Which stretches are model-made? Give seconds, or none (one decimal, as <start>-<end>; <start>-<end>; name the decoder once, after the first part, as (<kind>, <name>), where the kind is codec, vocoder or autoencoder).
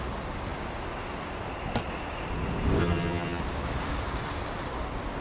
2.8-3.4 (vocoder, HiFi-GAN)